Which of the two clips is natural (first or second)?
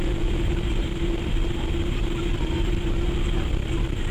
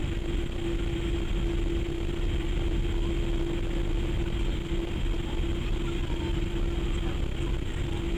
second